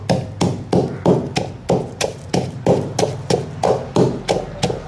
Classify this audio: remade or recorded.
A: recorded